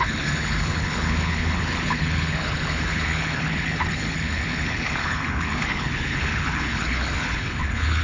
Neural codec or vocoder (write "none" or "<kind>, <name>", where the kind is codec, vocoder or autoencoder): codec, HILCodec